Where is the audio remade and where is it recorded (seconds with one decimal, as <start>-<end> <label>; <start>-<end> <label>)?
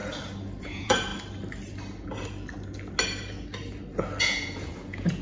0.0-0.6 recorded; 0.6-1.1 remade; 1.1-4.2 recorded; 4.2-5.2 remade